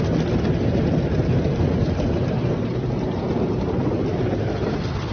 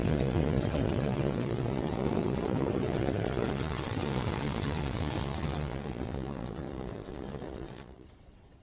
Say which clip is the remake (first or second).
second